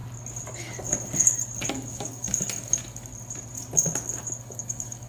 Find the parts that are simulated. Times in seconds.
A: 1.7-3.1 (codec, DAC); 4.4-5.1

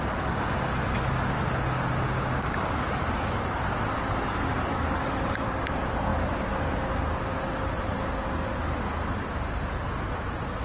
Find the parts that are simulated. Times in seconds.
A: 4.7-5.2 (codec, DAC)

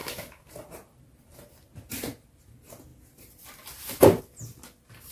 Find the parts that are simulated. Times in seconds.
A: 0.0-0.5 (codec, DAC)

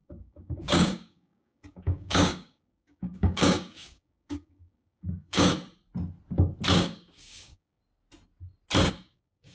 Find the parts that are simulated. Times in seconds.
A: 0.0-5.5 (codec, DAC); 6.7-7.8; 8.9-9.5

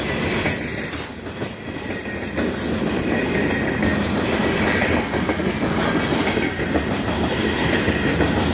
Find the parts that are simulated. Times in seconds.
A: none

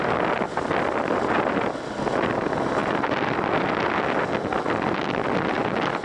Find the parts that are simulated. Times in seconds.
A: none

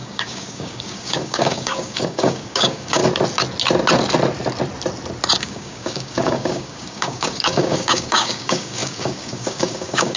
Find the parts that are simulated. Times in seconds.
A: 0.0-3.0 (codec, DAC); 5.4-10.2